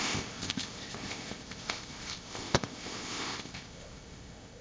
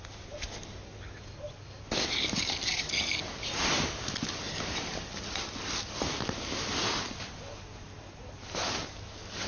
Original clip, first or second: second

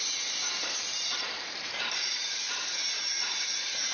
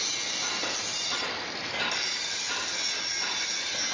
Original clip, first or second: second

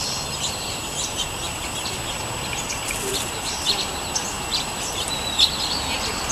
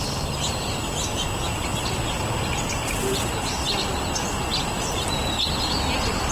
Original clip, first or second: second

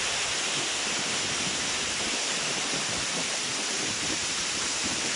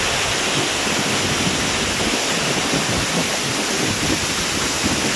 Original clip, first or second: second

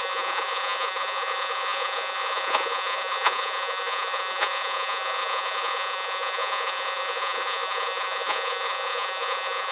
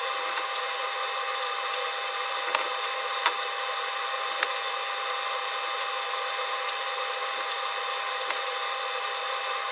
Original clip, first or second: second